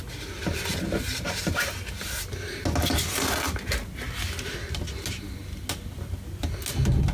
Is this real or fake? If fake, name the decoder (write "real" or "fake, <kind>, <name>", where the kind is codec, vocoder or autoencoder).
real